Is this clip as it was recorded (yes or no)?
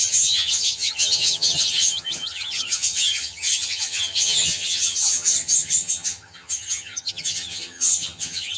no